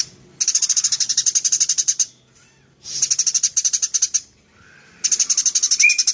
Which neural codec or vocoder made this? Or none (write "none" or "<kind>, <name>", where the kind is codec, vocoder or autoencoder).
none